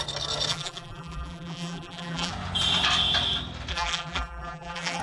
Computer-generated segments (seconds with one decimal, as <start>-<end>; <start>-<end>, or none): 0.5-2.3; 3.7-5.0